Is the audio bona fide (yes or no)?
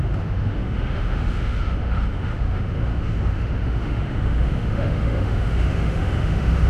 no